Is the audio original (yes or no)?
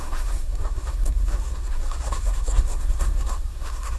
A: no